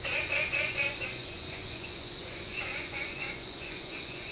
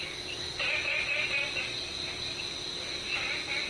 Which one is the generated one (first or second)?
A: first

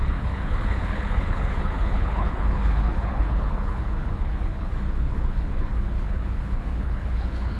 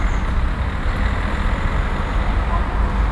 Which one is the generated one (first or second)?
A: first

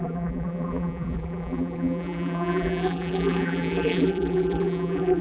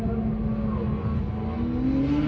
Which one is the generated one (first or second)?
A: first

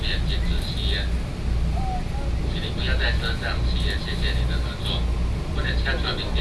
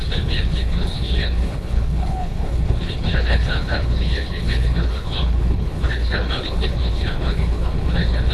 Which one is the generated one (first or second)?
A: second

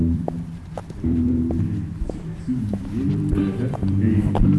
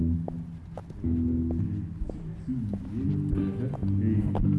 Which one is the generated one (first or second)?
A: first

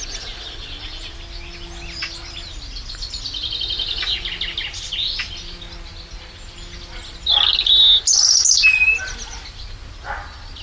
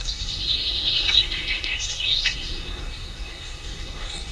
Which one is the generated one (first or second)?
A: second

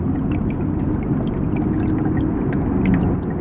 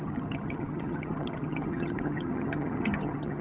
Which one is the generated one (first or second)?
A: second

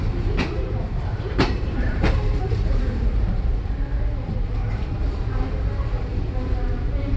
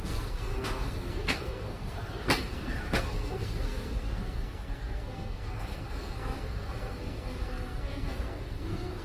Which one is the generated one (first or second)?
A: second